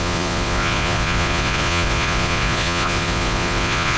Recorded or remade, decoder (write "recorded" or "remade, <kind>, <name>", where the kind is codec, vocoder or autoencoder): remade, vocoder, Vocos